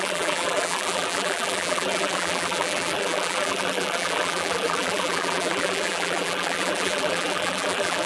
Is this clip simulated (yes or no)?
yes